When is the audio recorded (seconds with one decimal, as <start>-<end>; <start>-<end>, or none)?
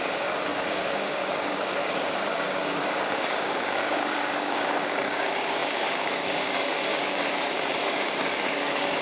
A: none